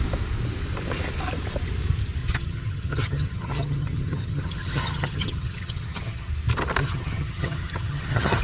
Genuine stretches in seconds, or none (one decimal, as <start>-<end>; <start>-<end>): 0.0-2.2; 6.3-6.8